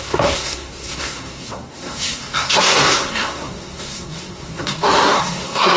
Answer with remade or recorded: remade